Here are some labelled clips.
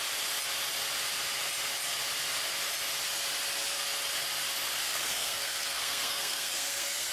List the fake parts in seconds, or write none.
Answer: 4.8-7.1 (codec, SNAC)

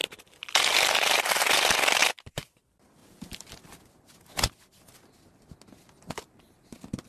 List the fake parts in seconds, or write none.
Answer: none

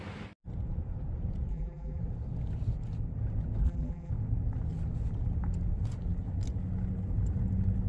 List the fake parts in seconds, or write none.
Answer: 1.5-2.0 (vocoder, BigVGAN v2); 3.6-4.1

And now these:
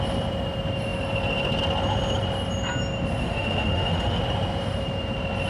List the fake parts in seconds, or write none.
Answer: 3.2-4.2 (autoencoder, DAC-VAE)

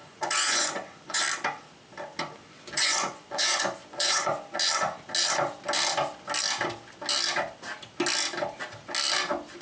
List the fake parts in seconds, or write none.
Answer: 0.0-1.2 (vocoder, Vocos); 2.4-4.3

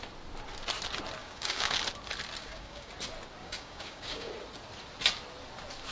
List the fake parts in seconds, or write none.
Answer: 1.2-1.8 (codec, DAC); 2.4-2.9; 3.4-4.3

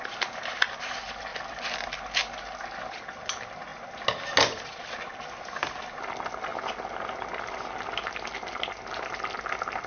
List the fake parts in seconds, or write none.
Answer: 1.3-1.9 (vocoder, BigVGAN v2)

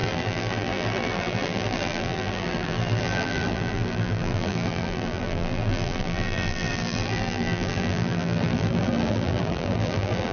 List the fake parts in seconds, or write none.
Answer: 0.0-10.3 (vocoder, BigVGAN v2)